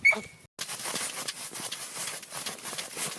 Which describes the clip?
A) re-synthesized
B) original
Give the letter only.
B